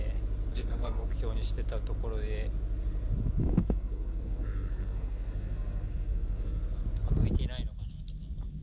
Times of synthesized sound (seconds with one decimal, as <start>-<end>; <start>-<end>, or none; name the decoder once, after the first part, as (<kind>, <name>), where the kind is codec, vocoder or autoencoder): 0.5-1.1 (codec, SNAC); 3.4-6.6